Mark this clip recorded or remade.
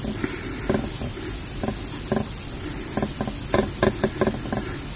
recorded